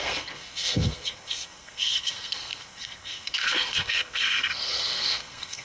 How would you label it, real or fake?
fake